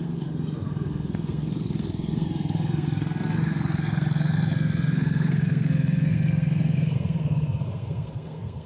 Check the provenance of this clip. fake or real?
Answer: fake